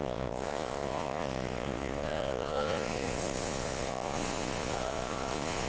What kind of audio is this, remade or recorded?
remade